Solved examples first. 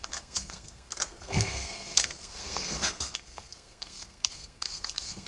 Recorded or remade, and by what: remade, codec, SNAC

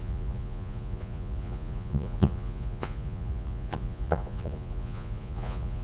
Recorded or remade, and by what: remade, vocoder, Vocos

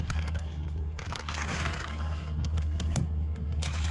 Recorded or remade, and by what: remade, codec, SNAC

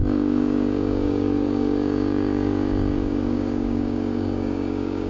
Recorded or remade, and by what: remade, codec, DAC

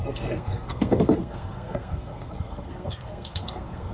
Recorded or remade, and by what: remade, codec, SNAC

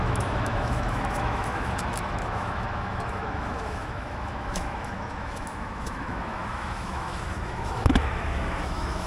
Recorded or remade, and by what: remade, autoencoder, DAC-VAE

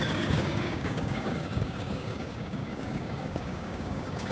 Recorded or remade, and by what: remade, codec, DAC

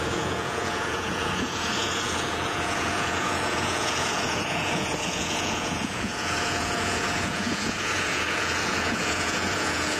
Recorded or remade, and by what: remade, vocoder, Vocos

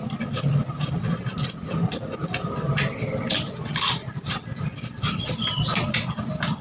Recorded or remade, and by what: recorded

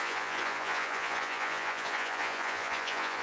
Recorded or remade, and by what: remade, vocoder, Vocos